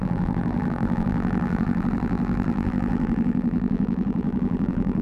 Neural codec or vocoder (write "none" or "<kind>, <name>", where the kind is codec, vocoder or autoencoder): vocoder, BigVGAN v2